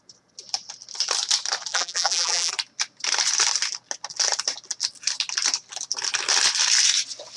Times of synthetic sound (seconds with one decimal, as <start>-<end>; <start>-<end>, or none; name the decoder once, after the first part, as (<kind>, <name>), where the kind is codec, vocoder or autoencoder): 1.7-2.5 (vocoder, BigVGAN v2)